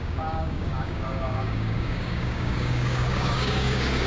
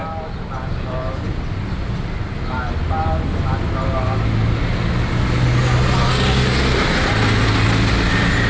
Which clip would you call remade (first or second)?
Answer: first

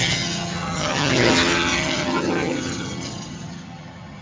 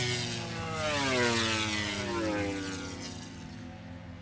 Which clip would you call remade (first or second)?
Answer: first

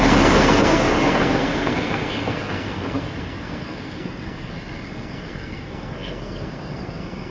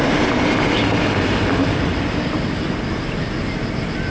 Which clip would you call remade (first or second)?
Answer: first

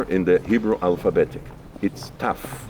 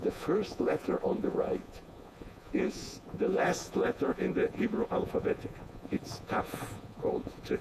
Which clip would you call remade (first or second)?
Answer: second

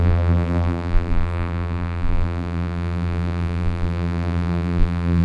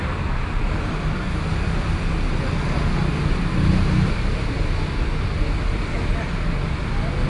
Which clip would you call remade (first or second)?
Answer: first